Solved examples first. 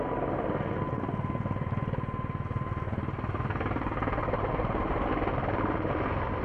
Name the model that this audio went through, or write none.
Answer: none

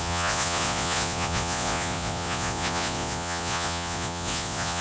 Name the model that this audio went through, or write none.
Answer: vocoder, Vocos